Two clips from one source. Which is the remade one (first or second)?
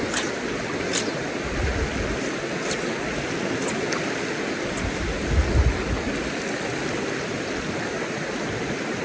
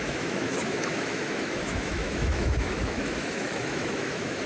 second